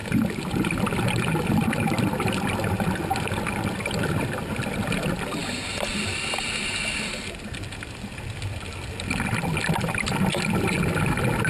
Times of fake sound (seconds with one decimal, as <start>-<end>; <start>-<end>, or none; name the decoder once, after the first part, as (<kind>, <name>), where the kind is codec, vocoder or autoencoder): none